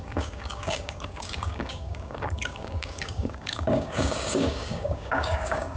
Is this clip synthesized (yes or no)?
yes